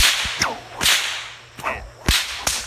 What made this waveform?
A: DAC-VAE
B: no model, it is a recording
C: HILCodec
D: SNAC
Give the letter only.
B